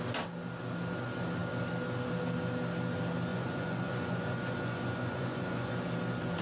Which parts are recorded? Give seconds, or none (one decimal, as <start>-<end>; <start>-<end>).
0.0-3.3; 5.7-6.4